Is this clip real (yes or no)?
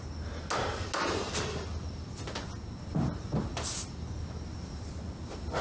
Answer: yes